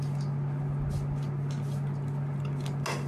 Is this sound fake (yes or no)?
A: no